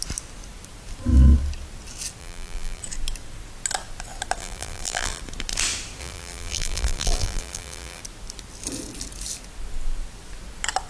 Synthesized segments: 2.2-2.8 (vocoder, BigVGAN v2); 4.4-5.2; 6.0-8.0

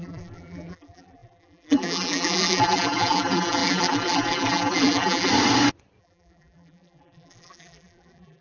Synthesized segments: 0.0-5.3 (vocoder, BigVGAN v2); 6.0-8.4

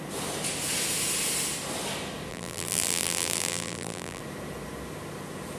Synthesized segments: 2.3-4.2 (vocoder, BigVGAN v2)

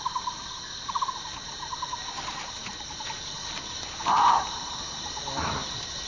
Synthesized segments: 4.0-6.1 (vocoder, BigVGAN v2)